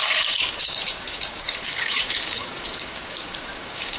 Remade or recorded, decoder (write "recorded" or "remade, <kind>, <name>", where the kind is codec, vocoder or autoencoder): remade, codec, DAC